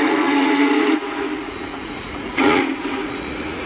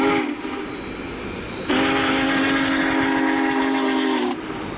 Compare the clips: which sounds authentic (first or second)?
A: second